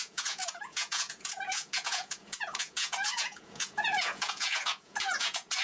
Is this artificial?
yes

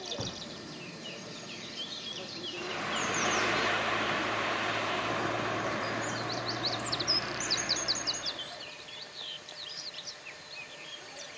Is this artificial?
yes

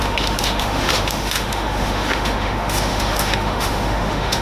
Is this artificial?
yes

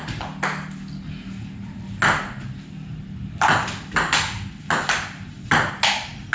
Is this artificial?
no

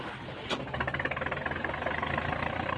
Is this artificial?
no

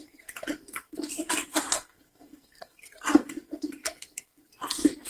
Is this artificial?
yes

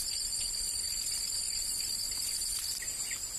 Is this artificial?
no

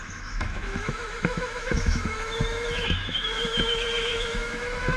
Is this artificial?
yes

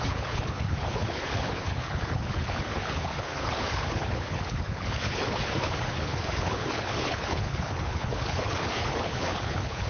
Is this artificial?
yes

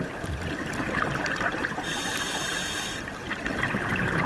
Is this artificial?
no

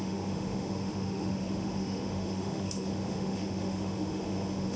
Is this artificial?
yes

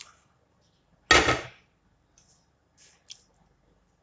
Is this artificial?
no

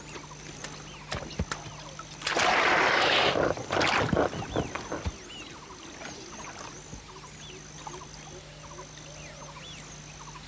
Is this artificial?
no